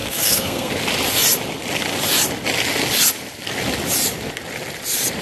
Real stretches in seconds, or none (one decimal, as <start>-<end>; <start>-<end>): 0.7-5.2